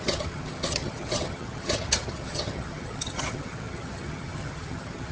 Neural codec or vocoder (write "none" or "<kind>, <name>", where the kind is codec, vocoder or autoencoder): vocoder, HiFi-GAN